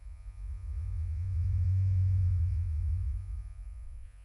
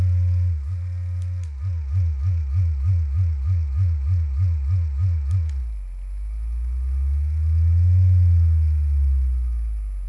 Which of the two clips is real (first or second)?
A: second